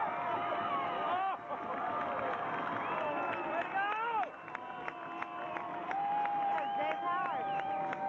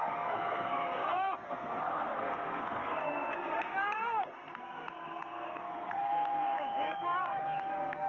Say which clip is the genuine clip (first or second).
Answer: first